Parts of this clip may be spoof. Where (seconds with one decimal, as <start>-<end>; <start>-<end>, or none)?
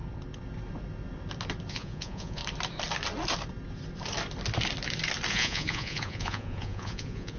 1.7-2.4; 5.3-7.4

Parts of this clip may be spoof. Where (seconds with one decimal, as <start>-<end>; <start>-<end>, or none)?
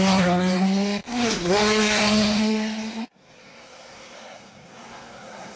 0.0-5.6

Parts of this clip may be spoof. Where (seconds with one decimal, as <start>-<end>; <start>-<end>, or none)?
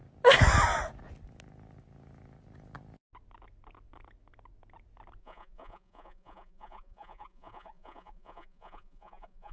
5.2-9.5